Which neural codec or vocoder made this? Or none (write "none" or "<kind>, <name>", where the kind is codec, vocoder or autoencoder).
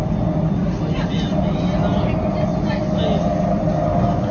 none